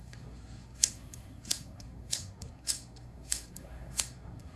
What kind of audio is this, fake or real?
fake